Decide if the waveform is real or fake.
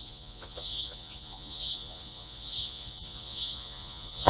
fake